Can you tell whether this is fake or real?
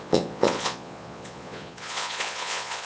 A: fake